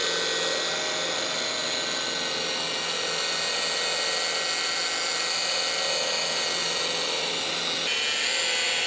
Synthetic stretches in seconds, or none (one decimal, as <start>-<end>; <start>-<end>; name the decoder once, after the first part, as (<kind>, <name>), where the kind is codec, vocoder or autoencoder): none